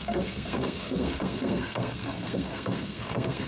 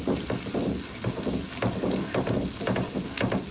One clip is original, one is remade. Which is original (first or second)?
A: second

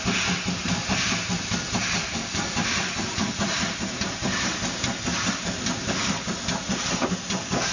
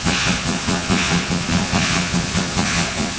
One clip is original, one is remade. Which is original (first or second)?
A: first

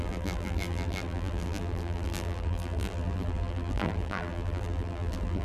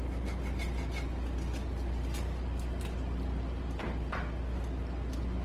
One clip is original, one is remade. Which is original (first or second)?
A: second